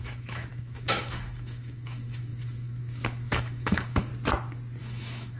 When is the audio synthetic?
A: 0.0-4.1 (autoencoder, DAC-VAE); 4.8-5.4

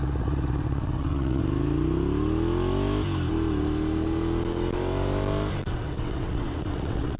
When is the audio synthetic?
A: 0.0-1.4 (vocoder, WaveNeXt); 5.7-7.2

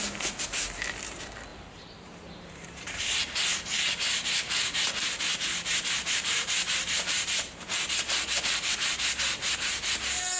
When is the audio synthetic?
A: 1.5-3.2 (vocoder, BigVGAN v2); 5.3-8.1

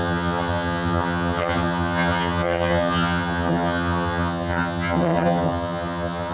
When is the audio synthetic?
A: 0.0-6.3 (vocoder, HiFi-GAN)

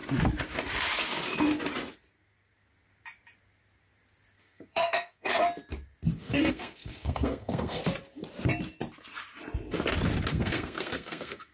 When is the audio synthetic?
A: 4.4-5.4 (codec, SNAC); 6.2-7.8; 10.3-11.5

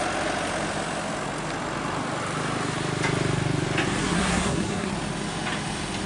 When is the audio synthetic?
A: 4.0-4.9 (codec, SNAC)

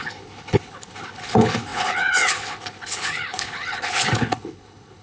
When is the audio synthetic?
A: 0.0-5.0 (codec, HILCodec)

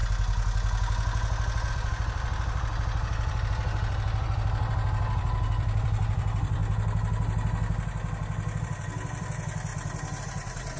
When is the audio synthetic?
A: 1.7-6.6 (vocoder, BigVGAN v2); 8.6-9.7; 10.2-10.8